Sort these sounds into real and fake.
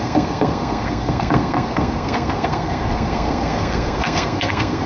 fake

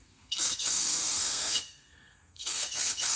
fake